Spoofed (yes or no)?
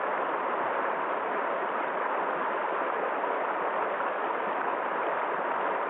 no